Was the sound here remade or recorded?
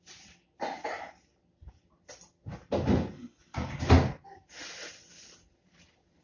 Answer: recorded